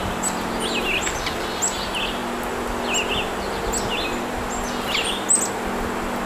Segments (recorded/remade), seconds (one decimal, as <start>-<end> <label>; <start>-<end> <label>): 0.0-6.3 recorded